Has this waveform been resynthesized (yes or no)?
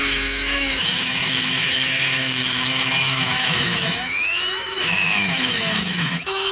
yes